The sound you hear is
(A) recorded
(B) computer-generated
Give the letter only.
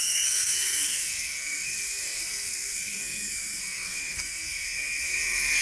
B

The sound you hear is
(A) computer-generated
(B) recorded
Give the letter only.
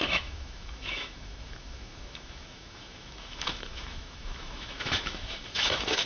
A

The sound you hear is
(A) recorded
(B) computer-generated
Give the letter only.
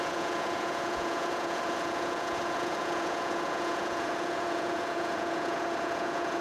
B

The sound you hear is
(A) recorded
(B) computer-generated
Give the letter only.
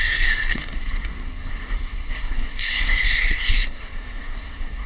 B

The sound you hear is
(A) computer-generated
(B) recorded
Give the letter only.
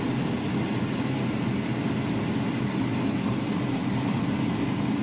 B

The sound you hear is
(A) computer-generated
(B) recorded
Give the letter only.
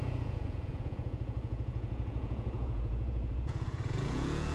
A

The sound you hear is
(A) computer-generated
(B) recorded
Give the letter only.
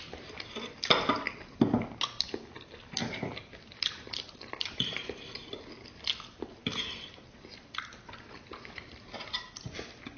B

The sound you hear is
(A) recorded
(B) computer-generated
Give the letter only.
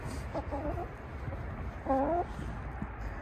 A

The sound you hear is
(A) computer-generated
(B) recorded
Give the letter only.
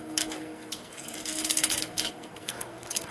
A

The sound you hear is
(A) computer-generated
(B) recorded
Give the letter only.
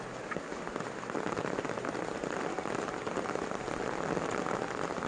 B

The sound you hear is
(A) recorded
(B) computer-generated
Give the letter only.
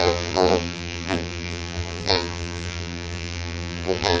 B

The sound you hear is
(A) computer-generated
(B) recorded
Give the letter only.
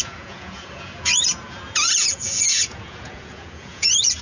A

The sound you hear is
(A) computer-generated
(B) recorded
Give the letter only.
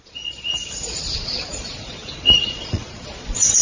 A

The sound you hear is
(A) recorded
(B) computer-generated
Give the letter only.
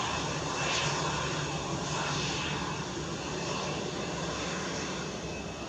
A